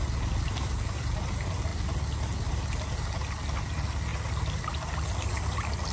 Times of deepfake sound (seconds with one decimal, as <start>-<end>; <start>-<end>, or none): none

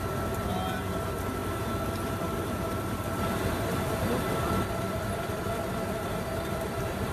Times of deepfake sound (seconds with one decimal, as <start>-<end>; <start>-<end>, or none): none

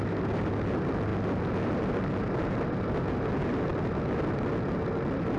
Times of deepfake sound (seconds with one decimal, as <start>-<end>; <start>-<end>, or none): none